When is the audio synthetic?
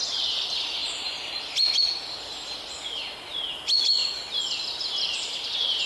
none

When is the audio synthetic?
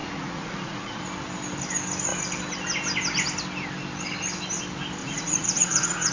0.0-1.0 (vocoder, Vocos); 5.0-6.1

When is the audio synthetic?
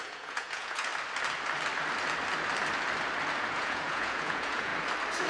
0.0-0.9 (vocoder, Vocos); 3.4-4.7